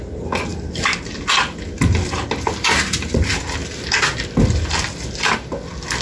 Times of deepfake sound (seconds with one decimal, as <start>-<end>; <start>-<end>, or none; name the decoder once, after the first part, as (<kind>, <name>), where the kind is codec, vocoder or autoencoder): none